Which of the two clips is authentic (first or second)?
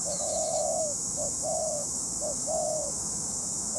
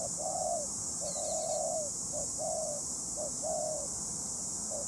second